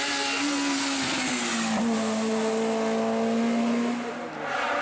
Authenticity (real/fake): real